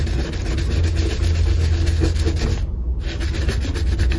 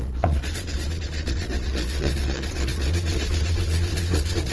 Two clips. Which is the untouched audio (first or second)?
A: first